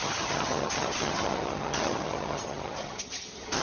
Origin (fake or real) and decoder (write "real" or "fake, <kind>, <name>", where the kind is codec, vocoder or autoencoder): fake, vocoder, HiFi-GAN